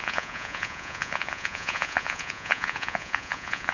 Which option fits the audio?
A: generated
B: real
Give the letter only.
A